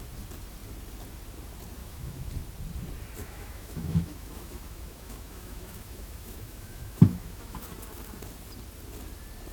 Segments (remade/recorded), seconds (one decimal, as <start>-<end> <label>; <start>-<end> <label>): 0.0-1.8 recorded; 1.8-2.3 remade; 2.3-3.2 recorded; 3.2-7.7 remade; 7.7-9.5 recorded